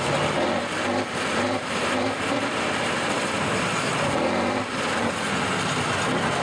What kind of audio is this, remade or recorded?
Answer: remade